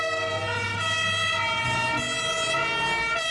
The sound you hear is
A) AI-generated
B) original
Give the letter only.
B